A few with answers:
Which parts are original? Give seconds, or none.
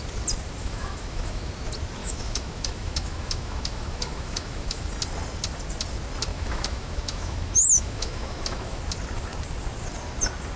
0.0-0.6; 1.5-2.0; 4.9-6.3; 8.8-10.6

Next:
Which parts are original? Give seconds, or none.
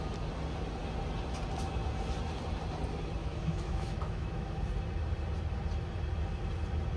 0.0-3.2; 4.6-7.0